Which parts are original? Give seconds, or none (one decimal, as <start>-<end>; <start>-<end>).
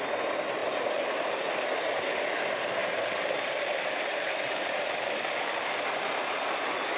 0.0-0.6; 1.4-2.8; 5.9-7.0